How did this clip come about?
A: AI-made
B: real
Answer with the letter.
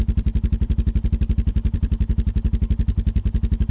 A